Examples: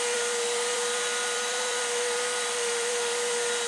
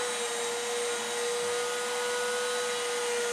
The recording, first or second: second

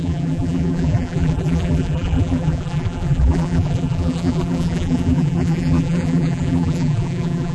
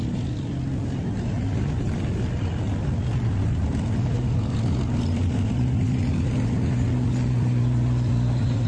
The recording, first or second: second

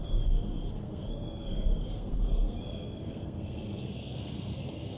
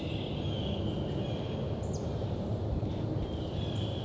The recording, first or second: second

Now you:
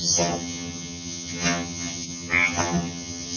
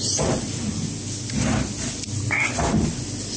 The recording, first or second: second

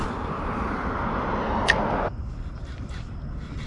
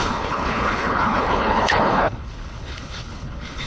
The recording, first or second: first